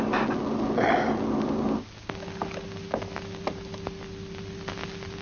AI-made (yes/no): no